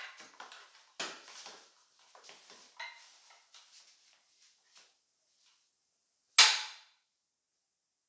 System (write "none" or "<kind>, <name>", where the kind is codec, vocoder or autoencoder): none